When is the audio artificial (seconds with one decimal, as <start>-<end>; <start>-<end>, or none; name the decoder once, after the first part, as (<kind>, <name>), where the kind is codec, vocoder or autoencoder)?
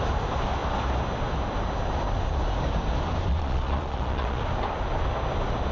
3.3-4.4 (vocoder, Vocos)